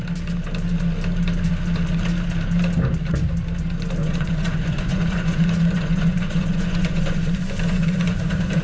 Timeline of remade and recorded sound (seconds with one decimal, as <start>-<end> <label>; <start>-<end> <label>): 0.0-4.0 recorded; 4.0-8.6 remade